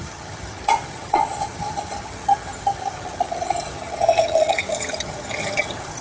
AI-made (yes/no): yes